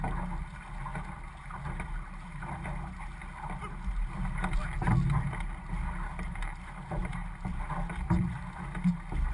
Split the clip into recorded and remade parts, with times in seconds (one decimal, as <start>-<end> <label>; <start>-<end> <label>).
0.0-9.3 recorded